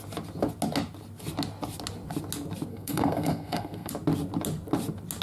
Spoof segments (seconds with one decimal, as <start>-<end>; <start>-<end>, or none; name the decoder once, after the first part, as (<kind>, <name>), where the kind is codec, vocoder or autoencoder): 2.7-3.9 (codec, SNAC)